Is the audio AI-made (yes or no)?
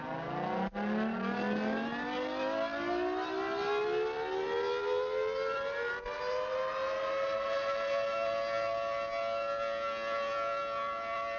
no